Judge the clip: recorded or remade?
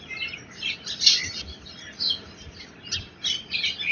recorded